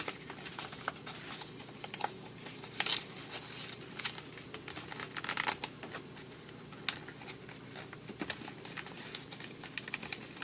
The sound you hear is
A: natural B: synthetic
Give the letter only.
A